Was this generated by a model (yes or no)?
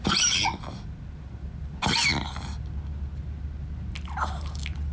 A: no